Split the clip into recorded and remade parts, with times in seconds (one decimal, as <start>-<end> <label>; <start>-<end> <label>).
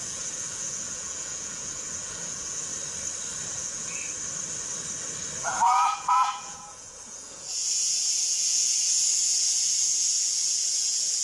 0.0-2.7 remade; 2.7-3.5 recorded; 3.5-4.0 remade; 4.0-5.4 recorded; 5.4-11.2 remade